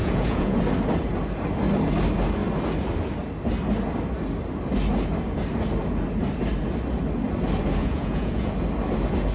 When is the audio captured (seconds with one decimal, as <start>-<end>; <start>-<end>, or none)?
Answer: 0.6-7.8; 8.5-9.3